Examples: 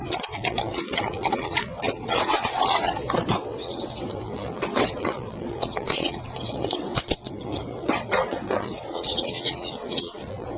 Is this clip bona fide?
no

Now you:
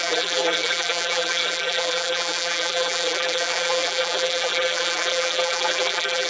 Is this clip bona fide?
no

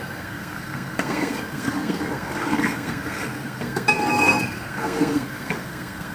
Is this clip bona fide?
no